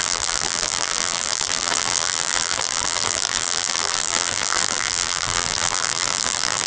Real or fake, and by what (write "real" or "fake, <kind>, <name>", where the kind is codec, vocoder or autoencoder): fake, vocoder, BigVGAN v2